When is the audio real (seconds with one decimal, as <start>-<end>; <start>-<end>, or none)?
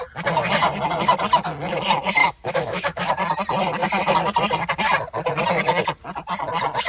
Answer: 0.0-2.2; 3.1-6.9